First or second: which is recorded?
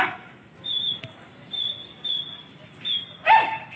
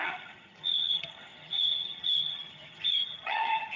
first